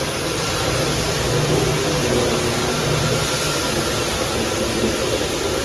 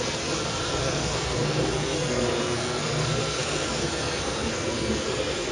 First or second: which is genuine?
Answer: first